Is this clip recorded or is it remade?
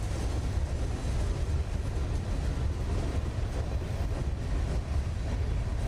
recorded